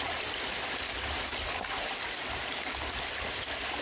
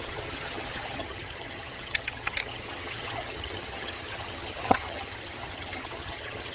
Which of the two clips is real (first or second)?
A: first